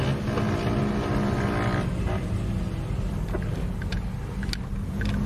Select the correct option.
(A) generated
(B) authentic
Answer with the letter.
B